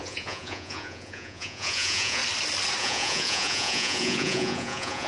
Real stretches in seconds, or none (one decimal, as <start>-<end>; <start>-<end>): 2.2-2.8